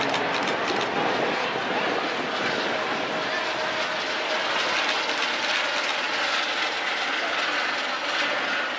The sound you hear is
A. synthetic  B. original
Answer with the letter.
B